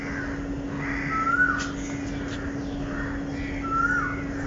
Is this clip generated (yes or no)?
no